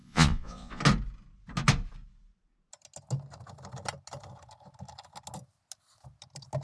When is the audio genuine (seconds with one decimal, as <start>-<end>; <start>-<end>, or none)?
0.8-6.6